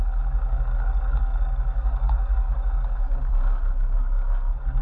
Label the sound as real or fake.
fake